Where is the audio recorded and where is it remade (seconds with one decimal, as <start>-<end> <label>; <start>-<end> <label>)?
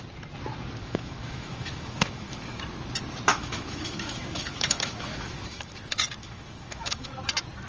0.0-0.8 recorded; 0.8-2.6 remade; 2.6-3.3 recorded; 3.3-5.7 remade; 5.7-6.2 recorded; 6.2-7.1 remade; 7.1-7.7 recorded